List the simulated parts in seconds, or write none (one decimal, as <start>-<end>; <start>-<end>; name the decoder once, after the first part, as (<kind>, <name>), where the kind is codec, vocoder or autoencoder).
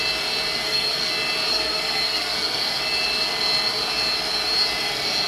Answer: 0.6-1.1 (codec, SNAC); 1.5-2.8